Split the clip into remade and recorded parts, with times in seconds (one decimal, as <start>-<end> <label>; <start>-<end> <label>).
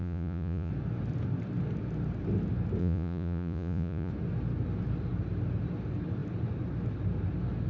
0.0-0.7 remade; 0.7-2.8 recorded; 2.8-4.1 remade; 4.1-7.7 recorded